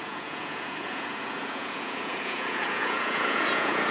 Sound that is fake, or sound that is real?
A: fake